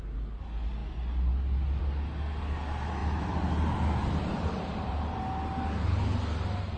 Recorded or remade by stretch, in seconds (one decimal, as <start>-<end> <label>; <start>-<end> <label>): 0.0-3.0 recorded; 3.0-5.2 remade; 5.2-6.8 recorded